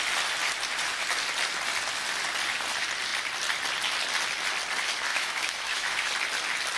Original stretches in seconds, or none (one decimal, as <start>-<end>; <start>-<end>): 0.0-5.1; 6.1-6.8